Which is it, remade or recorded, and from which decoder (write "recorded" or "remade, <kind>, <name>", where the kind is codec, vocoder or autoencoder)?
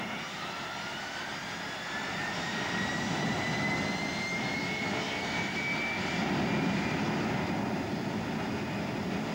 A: recorded